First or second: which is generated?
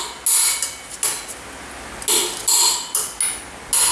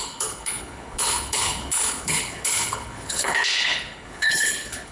second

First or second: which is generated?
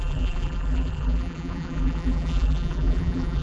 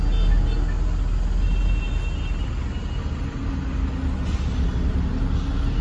first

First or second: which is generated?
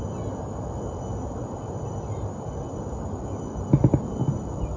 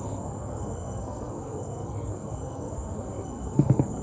second